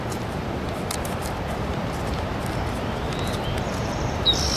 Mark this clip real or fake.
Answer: fake